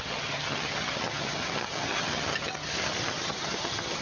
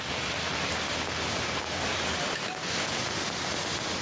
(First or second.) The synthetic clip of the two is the first